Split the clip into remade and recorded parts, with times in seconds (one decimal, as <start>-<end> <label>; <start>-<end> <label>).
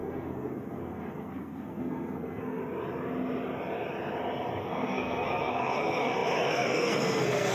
0.0-2.6 remade; 2.6-4.6 recorded; 4.6-7.5 remade